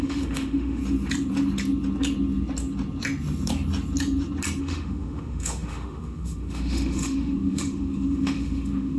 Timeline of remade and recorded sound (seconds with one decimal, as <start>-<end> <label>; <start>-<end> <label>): 0.0-0.8 remade; 0.8-4.6 recorded; 4.6-9.0 remade